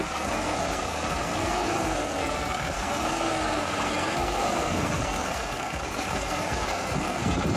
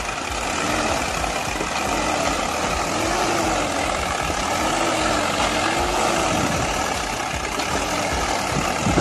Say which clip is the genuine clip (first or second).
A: second